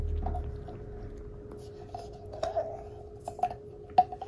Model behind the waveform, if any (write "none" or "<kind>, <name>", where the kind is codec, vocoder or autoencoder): none